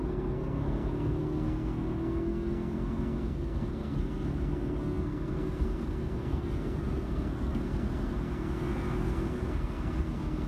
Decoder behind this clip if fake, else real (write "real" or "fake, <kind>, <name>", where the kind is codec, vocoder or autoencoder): fake, codec, SNAC